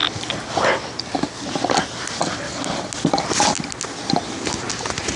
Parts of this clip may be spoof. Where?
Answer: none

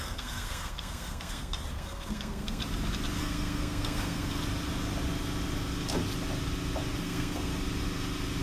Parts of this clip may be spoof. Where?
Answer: 0.0-2.6 (codec, SNAC); 3.2-4.4; 7.0-7.5

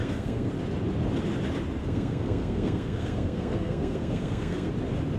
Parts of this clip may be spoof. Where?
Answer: 0.0-0.5 (codec, SNAC); 1.8-4.7

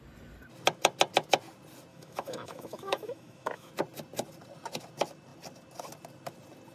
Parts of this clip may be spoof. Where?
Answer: 1.9-3.7 (autoencoder, DAC-VAE)

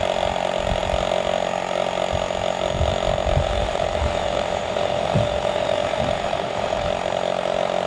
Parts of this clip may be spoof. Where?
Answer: 3.4-6.9 (autoencoder, DAC-VAE)

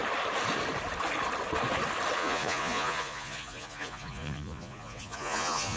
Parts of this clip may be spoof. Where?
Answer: 2.2-5.8 (vocoder, Vocos)

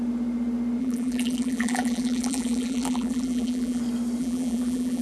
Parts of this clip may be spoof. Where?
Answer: 0.8-3.8 (vocoder, BigVGAN v2); 4.2-5.0